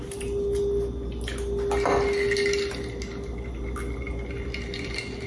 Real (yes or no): yes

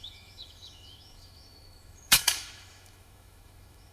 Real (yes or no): no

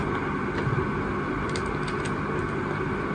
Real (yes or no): yes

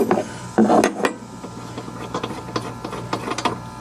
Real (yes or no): yes